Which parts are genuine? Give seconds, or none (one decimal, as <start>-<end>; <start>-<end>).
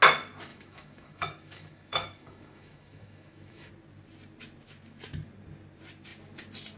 0.0-0.5; 3.7-6.8